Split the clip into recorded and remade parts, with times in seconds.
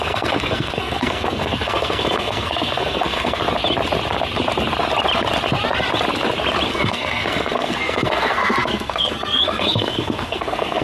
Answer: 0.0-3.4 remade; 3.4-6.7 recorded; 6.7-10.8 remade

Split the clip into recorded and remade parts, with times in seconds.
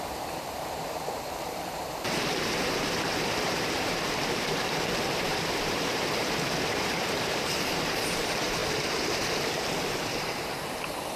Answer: 0.0-11.2 remade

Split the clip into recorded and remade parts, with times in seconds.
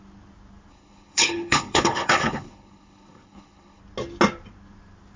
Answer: 0.0-0.7 recorded; 0.7-3.8 remade; 3.8-5.2 recorded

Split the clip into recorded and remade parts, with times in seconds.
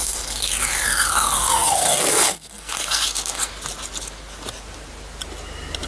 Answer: 0.0-3.5 remade; 3.5-5.9 recorded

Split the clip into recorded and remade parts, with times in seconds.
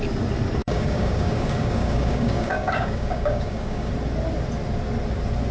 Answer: 0.0-0.6 recorded; 0.6-3.9 remade; 3.9-5.5 recorded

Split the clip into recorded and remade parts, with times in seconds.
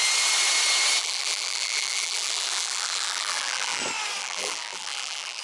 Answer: 0.0-1.0 recorded; 1.0-3.8 remade; 3.8-4.2 recorded; 4.2-5.4 remade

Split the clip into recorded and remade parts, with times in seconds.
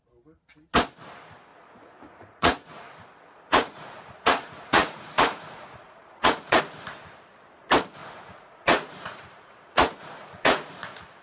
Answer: 0.0-1.5 recorded; 1.5-6.6 remade; 6.6-8.0 recorded; 8.0-11.2 remade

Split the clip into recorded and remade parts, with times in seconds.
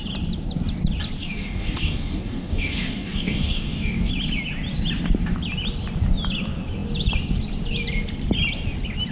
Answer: 0.0-1.2 recorded; 1.2-4.1 remade; 4.1-9.1 recorded